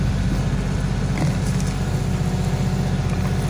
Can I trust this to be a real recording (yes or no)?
yes